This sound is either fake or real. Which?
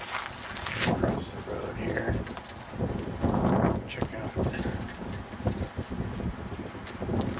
real